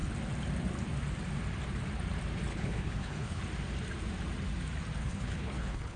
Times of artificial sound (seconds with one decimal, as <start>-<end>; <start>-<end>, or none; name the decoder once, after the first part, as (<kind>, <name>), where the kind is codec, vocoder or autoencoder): 2.5-3.4 (codec, HILCodec); 5.0-6.0